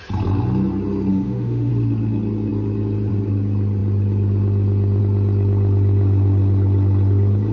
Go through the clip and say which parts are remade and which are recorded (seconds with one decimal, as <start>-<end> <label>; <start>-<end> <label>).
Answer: 0.0-1.1 recorded; 1.1-1.7 remade; 1.7-7.5 recorded